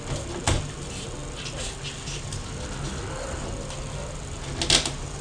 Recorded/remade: recorded